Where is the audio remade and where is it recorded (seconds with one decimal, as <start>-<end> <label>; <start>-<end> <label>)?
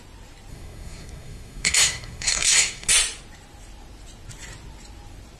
0.0-0.5 recorded; 0.5-2.9 remade; 2.9-5.4 recorded